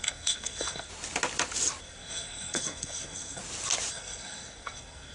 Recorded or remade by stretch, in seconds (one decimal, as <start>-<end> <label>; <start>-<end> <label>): 0.0-0.9 remade; 0.9-1.8 recorded; 1.8-3.4 remade; 3.4-3.9 recorded; 3.9-5.1 remade